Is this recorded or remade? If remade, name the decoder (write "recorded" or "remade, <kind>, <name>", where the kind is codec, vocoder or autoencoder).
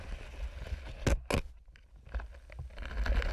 recorded